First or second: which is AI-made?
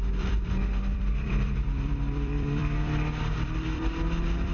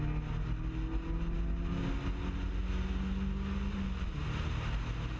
first